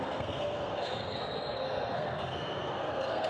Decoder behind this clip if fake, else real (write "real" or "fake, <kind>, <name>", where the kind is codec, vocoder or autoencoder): fake, codec, SNAC